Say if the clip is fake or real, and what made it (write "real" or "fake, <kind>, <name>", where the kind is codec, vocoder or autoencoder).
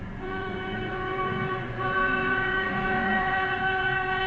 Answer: fake, vocoder, Vocos